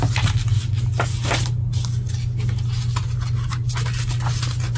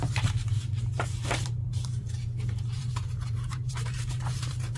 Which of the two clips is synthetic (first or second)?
second